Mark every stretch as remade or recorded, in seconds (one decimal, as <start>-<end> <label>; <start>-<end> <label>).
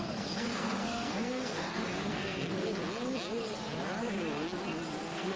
0.0-2.8 remade; 2.8-5.0 recorded; 5.0-5.4 remade